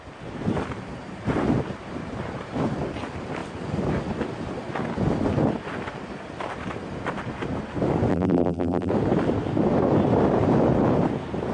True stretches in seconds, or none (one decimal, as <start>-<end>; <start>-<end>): 0.0-8.1; 8.9-11.5